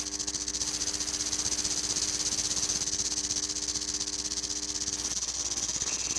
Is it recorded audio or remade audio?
recorded